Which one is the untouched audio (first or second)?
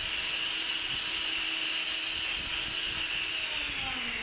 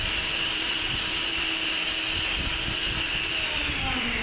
first